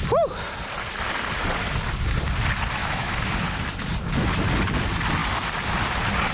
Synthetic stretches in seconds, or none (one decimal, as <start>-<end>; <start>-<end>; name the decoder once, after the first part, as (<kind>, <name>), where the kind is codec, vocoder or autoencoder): 2.8-3.3 (autoencoder, DAC-VAE)